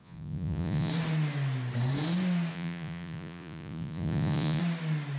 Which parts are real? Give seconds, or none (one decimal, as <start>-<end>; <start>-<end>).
0.9-2.5; 4.6-5.2